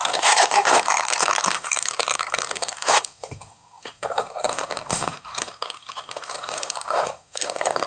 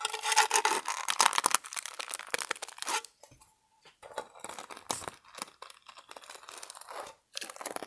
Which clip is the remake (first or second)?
first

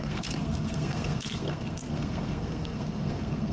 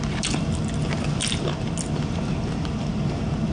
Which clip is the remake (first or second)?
first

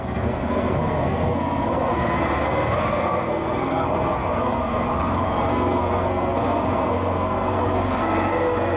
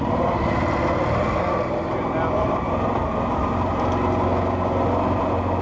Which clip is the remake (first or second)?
first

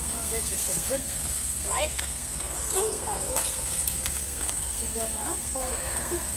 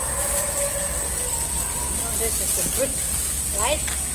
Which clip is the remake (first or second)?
first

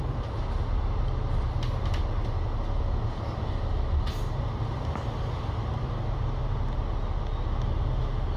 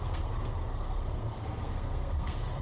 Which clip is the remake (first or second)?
second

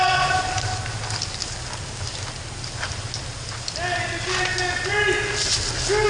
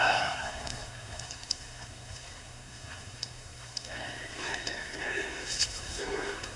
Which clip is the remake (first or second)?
second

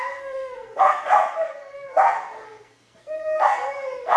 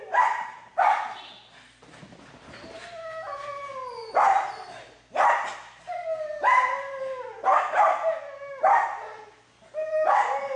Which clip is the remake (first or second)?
first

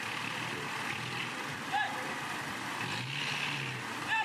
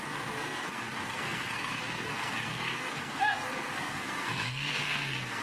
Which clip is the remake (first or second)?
second